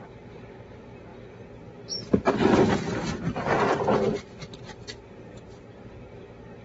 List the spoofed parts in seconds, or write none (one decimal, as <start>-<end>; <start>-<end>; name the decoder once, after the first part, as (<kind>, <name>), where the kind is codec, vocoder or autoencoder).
none